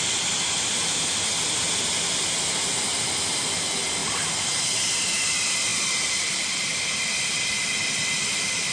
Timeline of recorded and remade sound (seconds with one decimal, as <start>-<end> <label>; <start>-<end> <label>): 0.0-4.0 recorded; 4.0-4.6 remade; 4.6-5.7 recorded; 5.7-6.8 remade; 6.8-8.7 recorded